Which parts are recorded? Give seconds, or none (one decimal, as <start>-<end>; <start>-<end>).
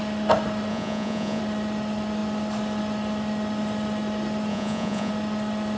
0.0-0.7; 1.4-4.5; 5.1-5.8